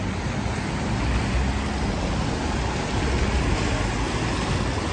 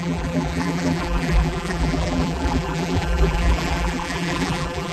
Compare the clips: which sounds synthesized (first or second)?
second